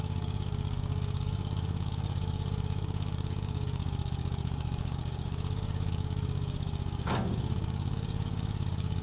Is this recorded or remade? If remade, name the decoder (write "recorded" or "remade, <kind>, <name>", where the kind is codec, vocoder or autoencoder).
remade, codec, DAC